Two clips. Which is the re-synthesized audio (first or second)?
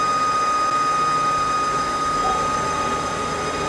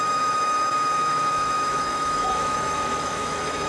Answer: second